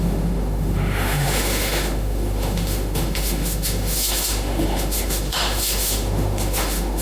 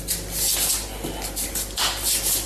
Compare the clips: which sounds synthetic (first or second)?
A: first